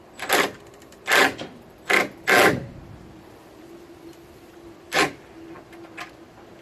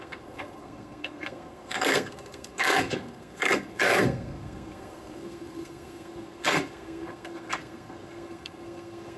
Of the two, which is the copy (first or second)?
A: second